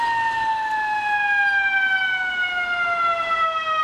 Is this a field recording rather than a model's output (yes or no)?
yes